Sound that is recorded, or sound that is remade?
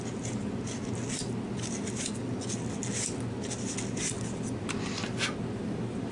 recorded